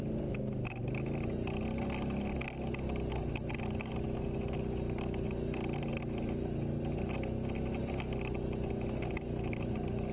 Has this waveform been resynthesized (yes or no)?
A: no